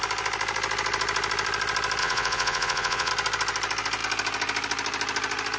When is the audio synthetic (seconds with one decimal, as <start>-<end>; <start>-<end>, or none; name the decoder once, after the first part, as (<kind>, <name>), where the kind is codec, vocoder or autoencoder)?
2.0-3.1 (vocoder, Vocos)